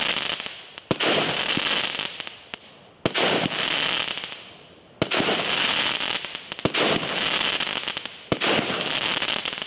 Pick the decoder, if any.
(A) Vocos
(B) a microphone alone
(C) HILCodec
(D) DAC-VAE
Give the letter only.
B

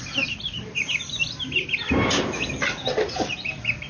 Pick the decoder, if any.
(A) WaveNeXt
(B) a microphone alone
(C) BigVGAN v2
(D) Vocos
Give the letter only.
B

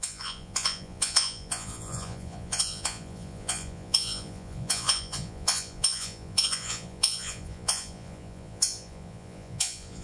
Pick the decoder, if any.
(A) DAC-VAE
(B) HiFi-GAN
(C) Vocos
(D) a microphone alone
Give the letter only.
C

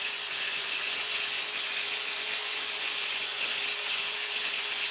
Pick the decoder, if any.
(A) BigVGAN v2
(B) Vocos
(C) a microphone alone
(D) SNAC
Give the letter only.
B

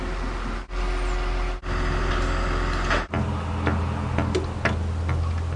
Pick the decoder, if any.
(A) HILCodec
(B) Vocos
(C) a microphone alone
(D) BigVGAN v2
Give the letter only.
C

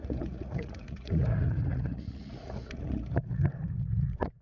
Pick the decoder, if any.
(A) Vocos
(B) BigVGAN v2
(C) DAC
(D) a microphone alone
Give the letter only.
A